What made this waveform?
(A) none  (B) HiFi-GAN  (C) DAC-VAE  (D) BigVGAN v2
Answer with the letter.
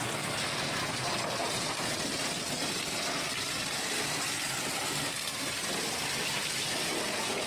A